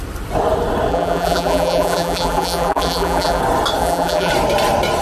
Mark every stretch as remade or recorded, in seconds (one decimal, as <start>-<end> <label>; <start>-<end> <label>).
0.0-0.9 recorded; 0.9-3.4 remade; 3.4-3.8 recorded; 3.8-4.3 remade; 4.3-5.0 recorded